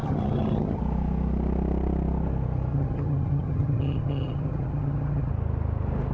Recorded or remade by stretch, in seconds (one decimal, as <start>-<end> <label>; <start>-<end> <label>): 0.0-0.8 remade; 0.8-2.7 recorded; 2.7-5.3 remade; 5.3-6.1 recorded

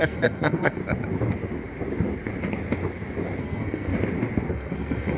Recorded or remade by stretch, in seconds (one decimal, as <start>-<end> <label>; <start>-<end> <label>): 0.0-0.8 remade; 0.8-3.4 recorded; 3.4-3.9 remade; 3.9-4.5 recorded; 4.5-5.2 remade

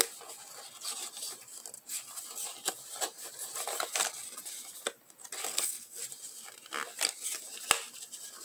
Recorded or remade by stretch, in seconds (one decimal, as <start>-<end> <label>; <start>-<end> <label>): 0.0-5.5 recorded; 5.5-6.0 remade; 6.0-8.4 recorded

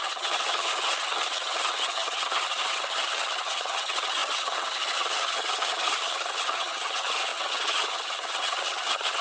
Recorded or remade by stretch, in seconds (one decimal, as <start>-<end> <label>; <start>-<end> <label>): 0.0-9.2 remade

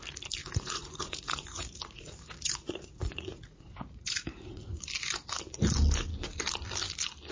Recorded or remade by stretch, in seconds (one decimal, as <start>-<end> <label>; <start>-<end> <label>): 0.0-0.4 recorded; 0.4-4.8 remade; 4.8-7.3 recorded

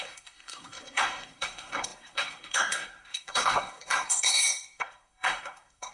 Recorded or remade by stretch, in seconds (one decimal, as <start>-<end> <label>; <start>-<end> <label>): 0.0-5.9 remade